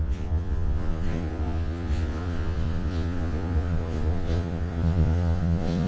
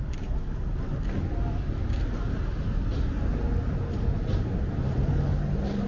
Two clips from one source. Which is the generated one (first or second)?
first